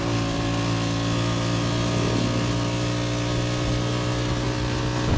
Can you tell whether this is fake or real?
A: real